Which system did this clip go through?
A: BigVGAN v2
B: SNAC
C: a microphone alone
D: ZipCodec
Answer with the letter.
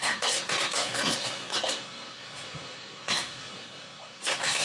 B